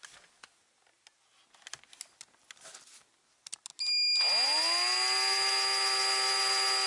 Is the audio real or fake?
real